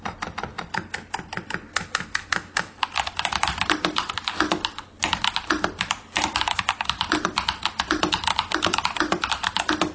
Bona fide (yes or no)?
yes